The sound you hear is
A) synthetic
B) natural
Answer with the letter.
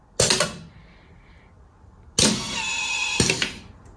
B